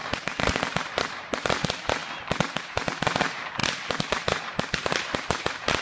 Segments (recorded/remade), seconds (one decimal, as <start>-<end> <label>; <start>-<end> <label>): 0.0-2.0 remade; 2.0-2.6 recorded; 2.6-3.6 remade; 3.6-4.4 recorded; 4.4-5.8 remade